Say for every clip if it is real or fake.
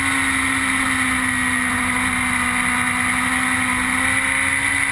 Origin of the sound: real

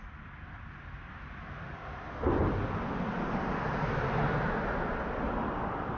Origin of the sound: real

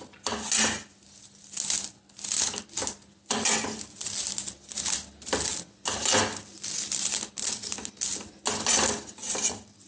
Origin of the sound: real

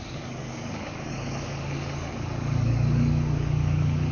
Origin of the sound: fake